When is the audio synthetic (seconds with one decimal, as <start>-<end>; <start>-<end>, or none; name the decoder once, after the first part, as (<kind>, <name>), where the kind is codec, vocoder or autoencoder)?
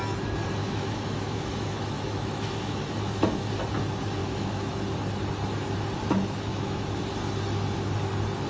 0.6-3.5 (autoencoder, DAC-VAE); 4.2-4.8; 6.5-7.0